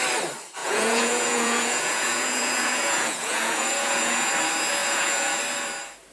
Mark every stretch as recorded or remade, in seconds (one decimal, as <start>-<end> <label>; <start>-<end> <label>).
0.0-0.6 recorded; 0.6-4.3 remade; 4.3-4.8 recorded; 4.8-5.4 remade; 5.4-6.1 recorded